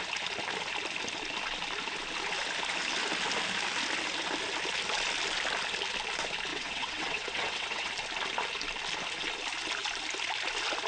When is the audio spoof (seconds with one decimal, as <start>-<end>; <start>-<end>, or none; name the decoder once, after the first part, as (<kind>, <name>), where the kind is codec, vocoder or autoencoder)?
6.5-7.9 (vocoder, WaveNeXt)